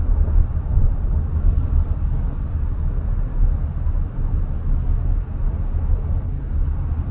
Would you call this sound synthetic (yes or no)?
no